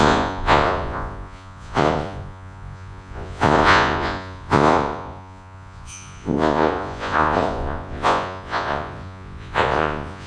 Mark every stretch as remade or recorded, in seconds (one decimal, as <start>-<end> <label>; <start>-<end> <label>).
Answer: 0.0-10.3 remade